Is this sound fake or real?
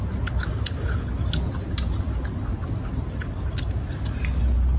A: real